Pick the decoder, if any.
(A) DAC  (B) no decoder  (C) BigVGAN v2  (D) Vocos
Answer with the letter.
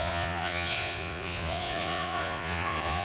D